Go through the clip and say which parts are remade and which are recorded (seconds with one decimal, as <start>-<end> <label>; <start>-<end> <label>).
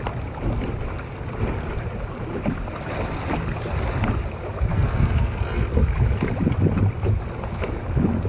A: 0.0-4.7 recorded; 4.7-5.4 remade; 5.4-8.3 recorded